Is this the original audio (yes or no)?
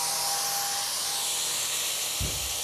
yes